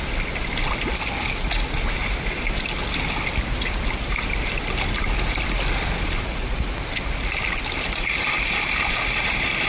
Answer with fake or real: real